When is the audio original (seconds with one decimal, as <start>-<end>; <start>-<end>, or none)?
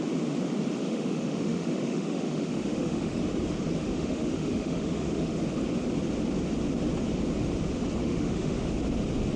0.0-0.8; 3.2-3.8; 5.4-8.0; 8.7-9.4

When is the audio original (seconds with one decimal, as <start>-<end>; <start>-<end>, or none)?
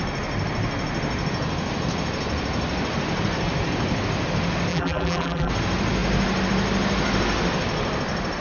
0.0-4.7; 5.5-8.4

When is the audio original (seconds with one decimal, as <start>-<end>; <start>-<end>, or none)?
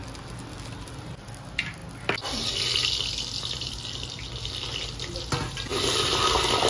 0.0-6.7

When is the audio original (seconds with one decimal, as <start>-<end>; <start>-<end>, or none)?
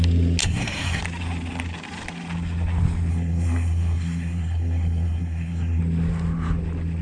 0.0-0.4; 1.0-3.1; 5.8-7.0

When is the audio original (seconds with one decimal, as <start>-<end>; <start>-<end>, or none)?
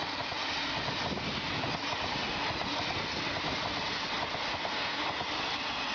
0.0-4.5; 5.0-5.9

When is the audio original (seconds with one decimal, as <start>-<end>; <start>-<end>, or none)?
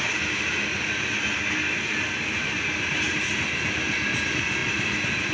0.0-5.3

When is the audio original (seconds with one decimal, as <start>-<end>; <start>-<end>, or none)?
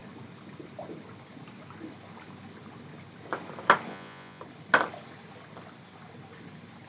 0.0-3.9; 4.4-6.9